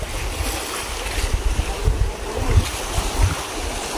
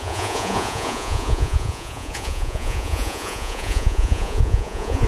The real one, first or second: first